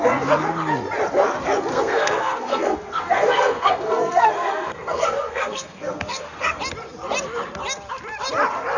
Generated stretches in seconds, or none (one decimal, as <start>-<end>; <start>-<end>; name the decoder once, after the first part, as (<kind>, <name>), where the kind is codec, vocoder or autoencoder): 1.7-6.6 (codec, SNAC)

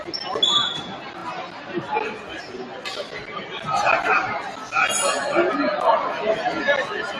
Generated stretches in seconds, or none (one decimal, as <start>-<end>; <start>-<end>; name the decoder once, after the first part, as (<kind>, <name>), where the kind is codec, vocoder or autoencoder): none